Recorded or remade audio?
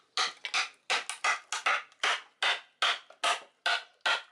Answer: recorded